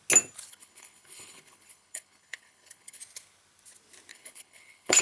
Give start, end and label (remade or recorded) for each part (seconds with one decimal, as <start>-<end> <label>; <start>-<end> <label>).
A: 0.0-0.5 recorded; 0.5-3.0 remade; 3.0-4.1 recorded; 4.1-5.0 remade